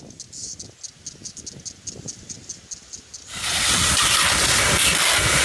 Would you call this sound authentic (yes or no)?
yes